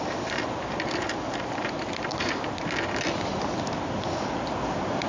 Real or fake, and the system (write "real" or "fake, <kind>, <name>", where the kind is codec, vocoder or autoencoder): real